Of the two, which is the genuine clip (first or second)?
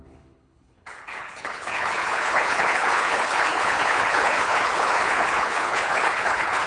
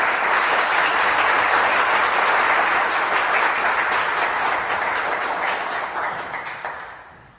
second